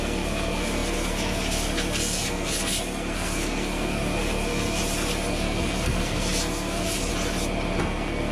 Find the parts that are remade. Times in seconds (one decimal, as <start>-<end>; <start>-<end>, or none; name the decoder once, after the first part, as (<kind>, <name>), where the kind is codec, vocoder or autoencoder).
0.0-4.8 (codec, SNAC); 5.3-7.1; 7.8-8.3